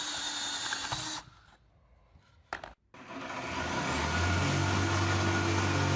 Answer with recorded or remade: recorded